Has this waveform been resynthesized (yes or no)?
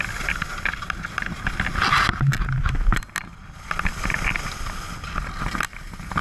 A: no